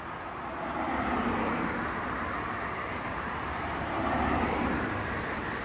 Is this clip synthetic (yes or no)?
no